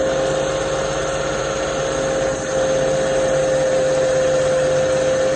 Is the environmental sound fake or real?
real